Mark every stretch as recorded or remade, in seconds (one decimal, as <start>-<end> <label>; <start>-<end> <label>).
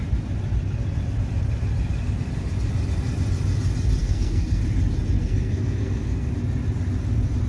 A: 0.0-4.0 recorded; 4.0-4.6 remade; 4.6-5.2 recorded; 5.2-6.3 remade; 6.3-7.5 recorded